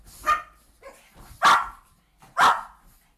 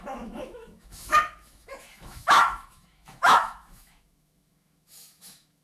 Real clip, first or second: first